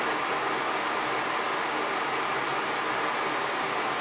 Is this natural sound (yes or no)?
yes